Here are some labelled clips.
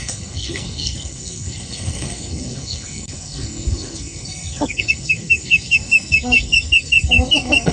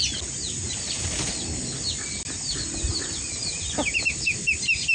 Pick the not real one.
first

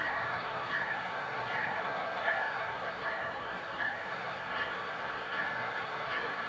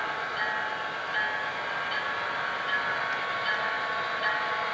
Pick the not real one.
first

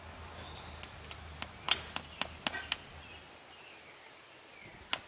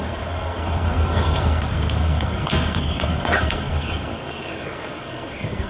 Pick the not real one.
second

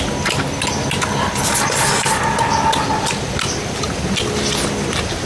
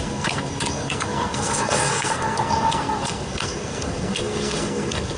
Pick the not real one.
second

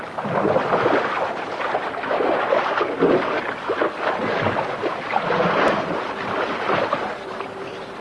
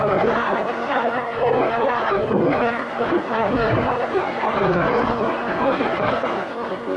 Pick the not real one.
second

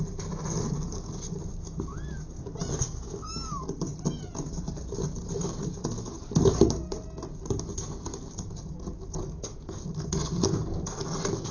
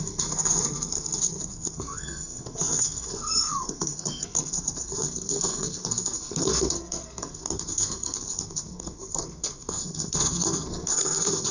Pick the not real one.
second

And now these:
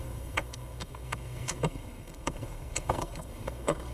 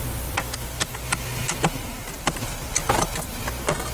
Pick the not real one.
first